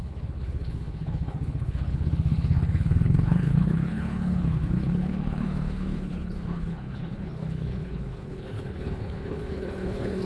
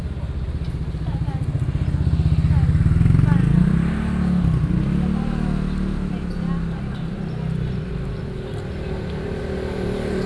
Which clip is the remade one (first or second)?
first